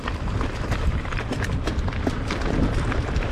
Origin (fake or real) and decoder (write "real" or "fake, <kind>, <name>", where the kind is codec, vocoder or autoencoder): fake, vocoder, BigVGAN v2